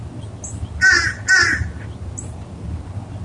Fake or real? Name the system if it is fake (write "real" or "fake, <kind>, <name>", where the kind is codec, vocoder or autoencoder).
real